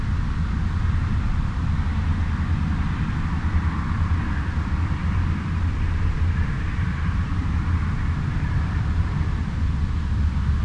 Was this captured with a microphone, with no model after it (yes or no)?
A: no